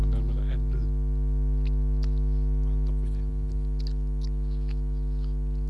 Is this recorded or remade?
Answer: recorded